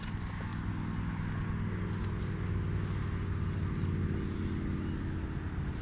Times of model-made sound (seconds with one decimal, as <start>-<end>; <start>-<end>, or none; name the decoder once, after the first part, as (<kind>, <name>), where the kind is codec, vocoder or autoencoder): none